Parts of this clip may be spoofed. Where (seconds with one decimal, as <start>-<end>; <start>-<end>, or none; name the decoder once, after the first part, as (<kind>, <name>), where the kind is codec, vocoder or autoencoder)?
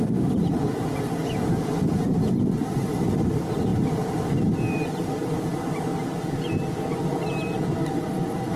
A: none